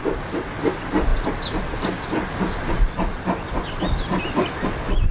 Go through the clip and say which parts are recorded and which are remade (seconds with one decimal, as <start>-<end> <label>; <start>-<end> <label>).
0.0-5.1 recorded